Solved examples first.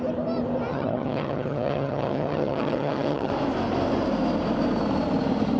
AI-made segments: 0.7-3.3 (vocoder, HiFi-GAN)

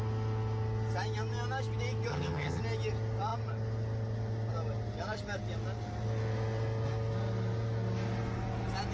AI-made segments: 2.1-2.6 (vocoder, HiFi-GAN)

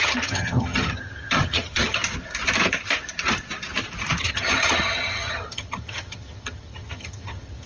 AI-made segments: 0.0-2.0 (vocoder, HiFi-GAN); 4.2-7.7

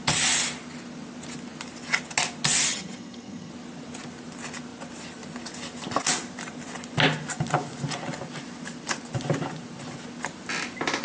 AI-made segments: 2.7-3.5 (vocoder, HiFi-GAN)

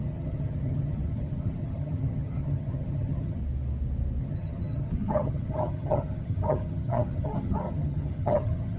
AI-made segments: 0.0-3.4 (vocoder, HiFi-GAN); 4.2-8.8

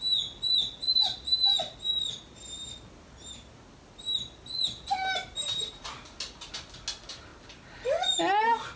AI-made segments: none

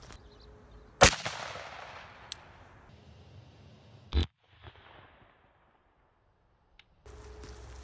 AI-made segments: none

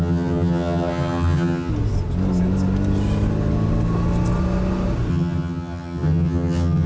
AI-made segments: 0.0-1.7 (vocoder, HiFi-GAN); 5.1-6.9